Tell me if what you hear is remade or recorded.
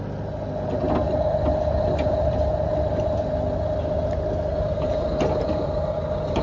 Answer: recorded